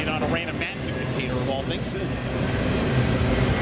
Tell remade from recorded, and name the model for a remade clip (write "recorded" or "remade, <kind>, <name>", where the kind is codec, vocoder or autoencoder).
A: recorded